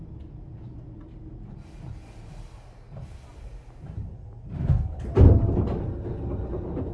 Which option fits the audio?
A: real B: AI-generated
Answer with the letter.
A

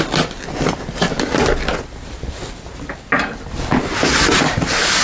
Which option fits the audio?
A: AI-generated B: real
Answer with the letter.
B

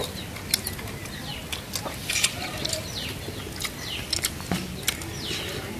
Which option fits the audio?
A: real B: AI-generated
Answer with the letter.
A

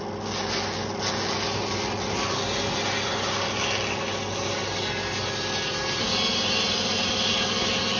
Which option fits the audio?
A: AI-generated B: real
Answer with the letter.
B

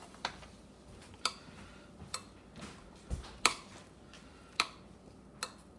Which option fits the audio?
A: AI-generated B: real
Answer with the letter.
B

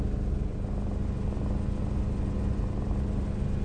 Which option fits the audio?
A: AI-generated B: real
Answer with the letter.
B